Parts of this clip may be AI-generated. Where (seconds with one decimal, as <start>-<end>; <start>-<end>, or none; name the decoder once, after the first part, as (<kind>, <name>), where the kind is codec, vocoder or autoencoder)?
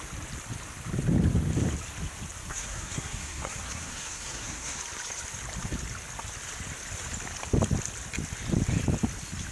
2.4-4.8 (codec, SNAC)